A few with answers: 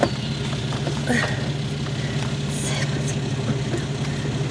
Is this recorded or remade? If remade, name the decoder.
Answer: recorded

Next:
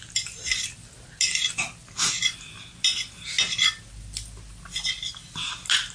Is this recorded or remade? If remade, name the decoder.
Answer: recorded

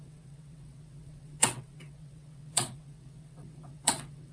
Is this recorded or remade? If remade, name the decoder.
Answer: remade, vocoder, WaveNeXt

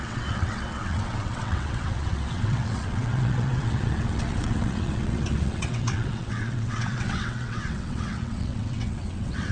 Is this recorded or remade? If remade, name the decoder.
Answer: remade, vocoder, WaveNeXt